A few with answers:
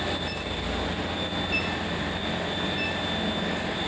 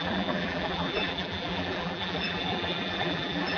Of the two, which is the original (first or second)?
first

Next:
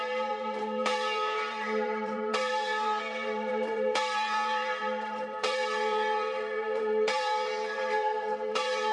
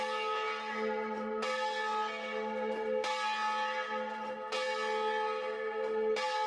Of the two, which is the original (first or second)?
second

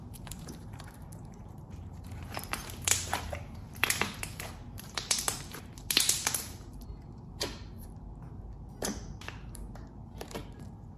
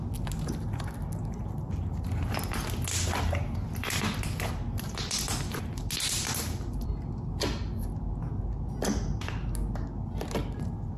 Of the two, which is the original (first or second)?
second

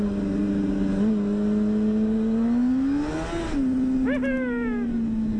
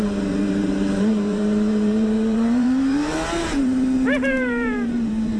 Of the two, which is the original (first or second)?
first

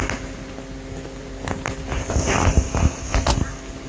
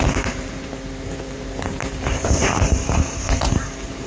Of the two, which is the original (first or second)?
first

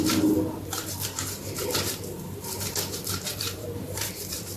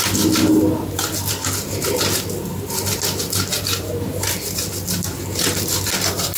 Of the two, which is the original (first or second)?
second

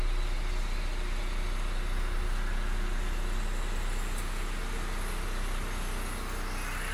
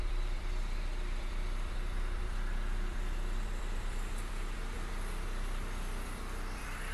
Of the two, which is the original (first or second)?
first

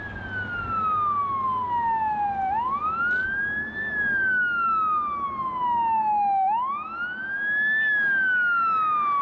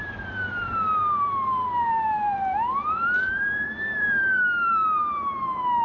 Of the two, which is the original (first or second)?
first